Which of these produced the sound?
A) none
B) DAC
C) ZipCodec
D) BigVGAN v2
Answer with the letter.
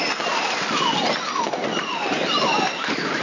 A